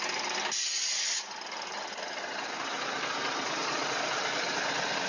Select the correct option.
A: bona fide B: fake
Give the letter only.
A